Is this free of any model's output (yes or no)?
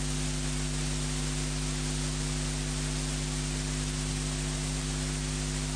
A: yes